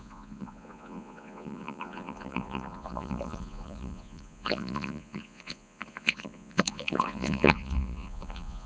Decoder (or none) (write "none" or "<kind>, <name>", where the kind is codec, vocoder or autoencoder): vocoder, Vocos